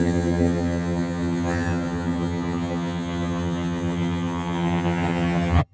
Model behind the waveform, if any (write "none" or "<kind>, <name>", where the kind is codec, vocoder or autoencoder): vocoder, HiFi-GAN